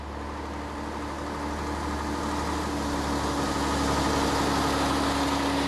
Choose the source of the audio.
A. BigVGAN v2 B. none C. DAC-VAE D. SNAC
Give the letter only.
B